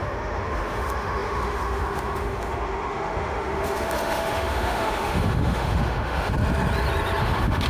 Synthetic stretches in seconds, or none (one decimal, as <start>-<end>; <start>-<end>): 0.0-6.3; 7.2-7.7